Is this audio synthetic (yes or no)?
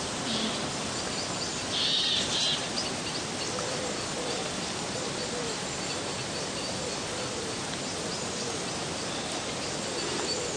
no